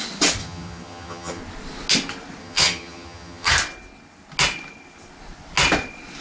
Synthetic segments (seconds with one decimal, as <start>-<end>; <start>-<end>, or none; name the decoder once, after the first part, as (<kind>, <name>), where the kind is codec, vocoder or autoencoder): 0.4-1.4 (vocoder, HiFi-GAN); 2.4-3.5